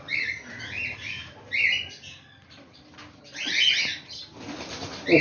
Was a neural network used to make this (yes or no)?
no